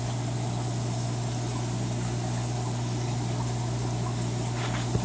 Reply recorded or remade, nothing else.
recorded